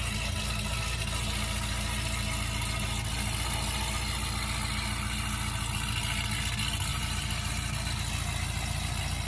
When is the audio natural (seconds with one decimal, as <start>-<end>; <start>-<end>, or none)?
0.0-6.9; 7.5-9.3